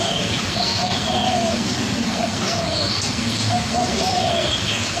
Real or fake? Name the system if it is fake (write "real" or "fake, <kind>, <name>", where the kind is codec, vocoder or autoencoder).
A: fake, codec, SNAC